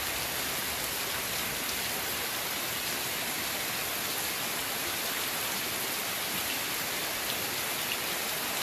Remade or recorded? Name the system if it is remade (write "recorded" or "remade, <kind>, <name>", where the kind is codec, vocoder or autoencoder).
recorded